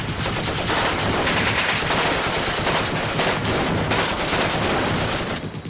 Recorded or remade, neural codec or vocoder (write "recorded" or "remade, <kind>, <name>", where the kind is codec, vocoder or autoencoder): recorded